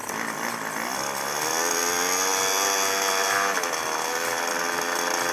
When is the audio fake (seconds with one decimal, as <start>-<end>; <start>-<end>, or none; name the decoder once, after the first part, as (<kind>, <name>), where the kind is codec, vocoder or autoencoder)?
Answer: 0.0-0.5 (vocoder, BigVGAN v2)